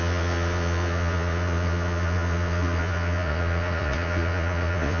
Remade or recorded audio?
remade